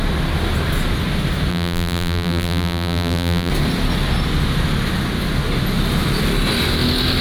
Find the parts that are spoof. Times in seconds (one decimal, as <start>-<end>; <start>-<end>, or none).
1.5-3.5